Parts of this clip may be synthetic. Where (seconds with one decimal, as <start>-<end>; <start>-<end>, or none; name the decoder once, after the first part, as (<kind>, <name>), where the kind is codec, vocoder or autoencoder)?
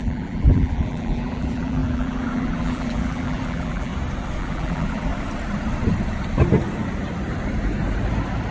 0.0-3.9 (vocoder, BigVGAN v2); 4.4-5.1